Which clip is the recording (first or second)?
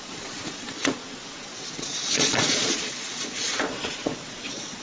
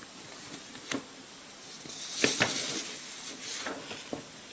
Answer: second